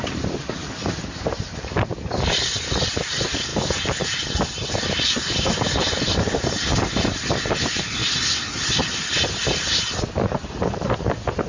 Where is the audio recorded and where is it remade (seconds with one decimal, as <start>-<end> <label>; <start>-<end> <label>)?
0.0-8.0 remade; 8.0-9.5 recorded; 9.5-11.5 remade